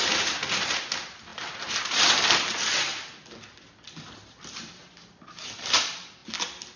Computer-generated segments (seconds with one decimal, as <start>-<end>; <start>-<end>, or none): none